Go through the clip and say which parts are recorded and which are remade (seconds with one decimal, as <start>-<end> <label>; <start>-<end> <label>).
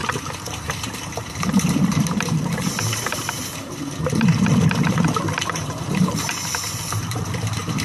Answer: 0.0-3.4 remade; 3.4-5.6 recorded; 5.6-6.5 remade; 6.5-7.0 recorded; 7.0-7.8 remade